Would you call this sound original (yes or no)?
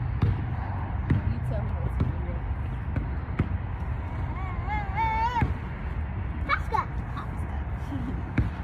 yes